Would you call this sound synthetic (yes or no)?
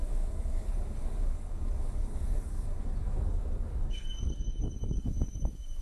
yes